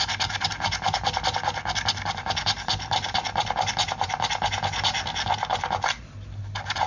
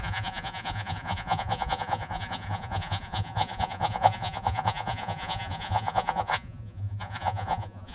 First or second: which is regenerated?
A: second